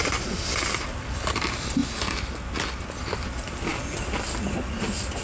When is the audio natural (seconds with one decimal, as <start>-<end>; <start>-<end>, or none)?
0.0-5.2